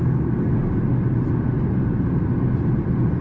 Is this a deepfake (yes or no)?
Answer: no